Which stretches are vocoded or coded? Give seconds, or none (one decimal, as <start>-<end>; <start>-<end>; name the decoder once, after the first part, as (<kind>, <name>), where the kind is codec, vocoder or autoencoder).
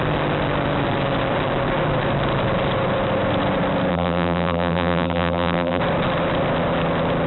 3.9-5.8 (vocoder, BigVGAN v2)